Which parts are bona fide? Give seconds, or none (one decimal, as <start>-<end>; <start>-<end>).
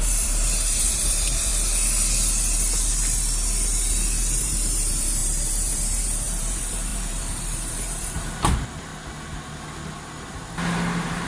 1.5-4.4; 8.9-10.3